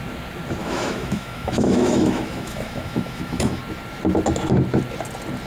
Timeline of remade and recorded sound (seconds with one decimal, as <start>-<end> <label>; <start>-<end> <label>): 0.0-0.6 recorded; 0.6-3.6 remade; 3.6-5.5 recorded